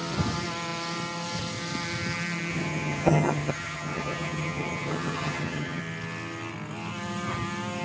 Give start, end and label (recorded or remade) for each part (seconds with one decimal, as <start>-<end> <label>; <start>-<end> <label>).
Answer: 0.0-2.5 recorded; 2.5-5.8 remade; 5.8-7.8 recorded